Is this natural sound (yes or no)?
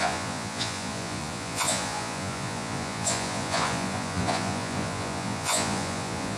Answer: no